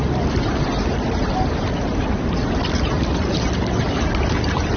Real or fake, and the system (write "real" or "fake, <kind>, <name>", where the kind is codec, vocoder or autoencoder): real